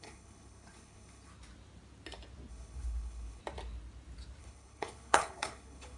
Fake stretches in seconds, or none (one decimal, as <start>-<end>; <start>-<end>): 0.0-1.3; 2.5-3.4; 4.4-6.0